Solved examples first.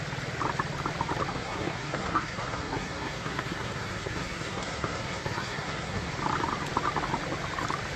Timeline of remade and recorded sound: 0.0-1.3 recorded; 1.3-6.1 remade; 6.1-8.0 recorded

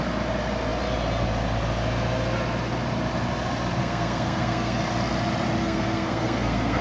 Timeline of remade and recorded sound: 0.0-3.8 recorded; 3.8-4.8 remade; 4.8-5.6 recorded; 5.6-6.8 remade

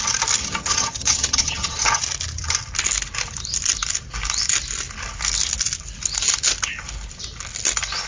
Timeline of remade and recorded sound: 0.0-0.4 recorded; 0.4-2.0 remade; 2.0-8.1 recorded

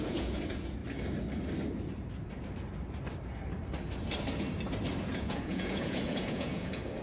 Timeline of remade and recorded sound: 0.0-0.8 remade; 0.8-5.0 recorded; 5.0-7.0 remade

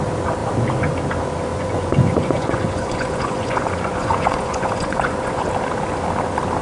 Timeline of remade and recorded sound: 0.0-1.5 recorded; 1.5-5.5 remade; 5.5-6.6 recorded

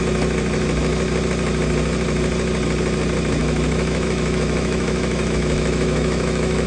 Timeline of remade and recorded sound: 0.0-3.4 recorded; 3.4-6.7 remade

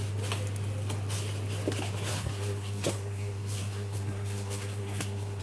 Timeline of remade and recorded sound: 0.0-2.1 recorded; 2.1-5.4 remade